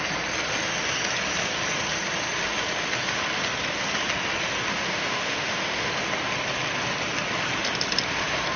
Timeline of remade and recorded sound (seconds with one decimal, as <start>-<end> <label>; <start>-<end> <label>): 0.0-4.7 recorded; 4.7-5.9 remade; 5.9-8.6 recorded